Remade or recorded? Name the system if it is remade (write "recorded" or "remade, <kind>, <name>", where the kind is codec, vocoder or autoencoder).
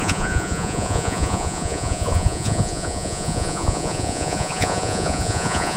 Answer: remade, vocoder, Vocos